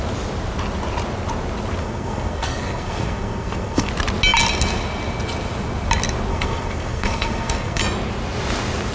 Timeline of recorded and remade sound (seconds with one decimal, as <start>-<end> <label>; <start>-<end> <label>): 0.0-1.8 recorded; 1.8-3.9 remade; 3.9-6.3 recorded; 6.3-7.8 remade; 7.8-8.9 recorded